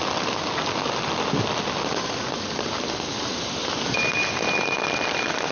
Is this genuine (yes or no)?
yes